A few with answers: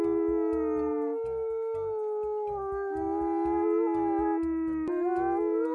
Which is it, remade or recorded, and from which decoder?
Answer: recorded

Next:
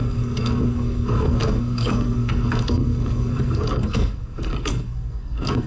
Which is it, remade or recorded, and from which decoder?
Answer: remade, codec, SNAC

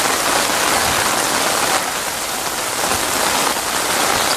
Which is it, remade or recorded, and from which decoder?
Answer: recorded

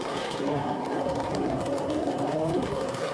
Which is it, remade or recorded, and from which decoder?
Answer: remade, codec, SNAC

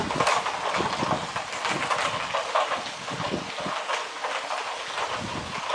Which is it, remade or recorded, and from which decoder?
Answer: recorded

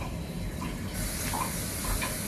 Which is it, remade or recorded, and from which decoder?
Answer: recorded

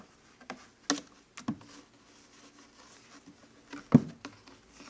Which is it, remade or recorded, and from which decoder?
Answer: recorded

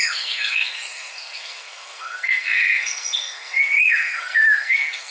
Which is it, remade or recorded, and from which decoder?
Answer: remade, codec, SNAC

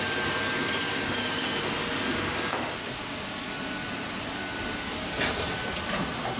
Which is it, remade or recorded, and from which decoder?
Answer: recorded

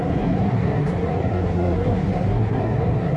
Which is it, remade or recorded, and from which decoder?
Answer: remade, codec, SNAC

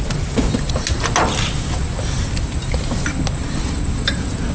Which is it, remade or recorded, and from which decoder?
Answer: recorded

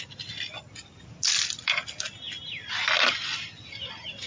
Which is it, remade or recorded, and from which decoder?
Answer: recorded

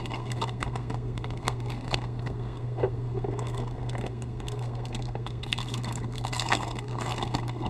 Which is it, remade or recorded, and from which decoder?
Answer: remade, codec, SNAC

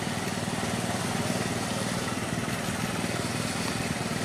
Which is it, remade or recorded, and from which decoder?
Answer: recorded